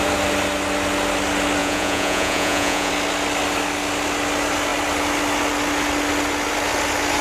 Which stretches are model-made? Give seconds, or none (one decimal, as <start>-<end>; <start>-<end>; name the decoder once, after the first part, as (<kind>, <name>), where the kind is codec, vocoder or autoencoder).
1.6-2.9 (vocoder, Vocos)